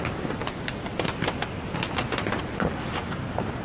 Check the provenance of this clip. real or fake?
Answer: real